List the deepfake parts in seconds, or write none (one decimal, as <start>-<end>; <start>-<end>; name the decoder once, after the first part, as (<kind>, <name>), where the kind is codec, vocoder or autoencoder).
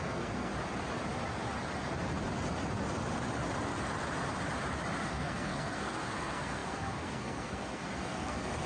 0.0-0.5 (codec, SNAC); 5.1-8.7